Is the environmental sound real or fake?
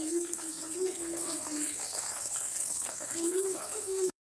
fake